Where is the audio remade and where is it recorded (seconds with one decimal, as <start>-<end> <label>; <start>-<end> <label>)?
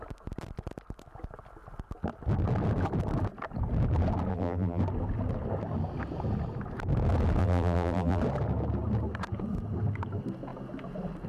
0.0-4.3 recorded; 4.3-4.8 remade; 4.8-7.4 recorded; 7.4-8.2 remade; 8.2-11.3 recorded